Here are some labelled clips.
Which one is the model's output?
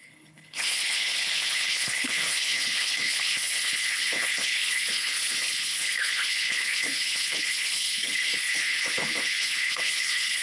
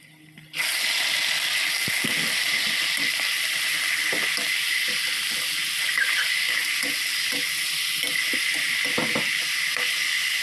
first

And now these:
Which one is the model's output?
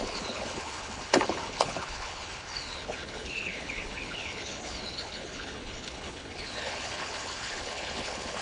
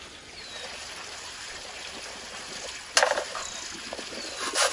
first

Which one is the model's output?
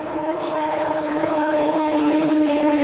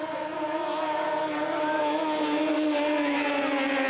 first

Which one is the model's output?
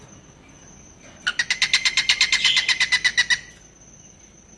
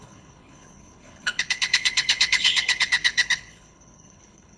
second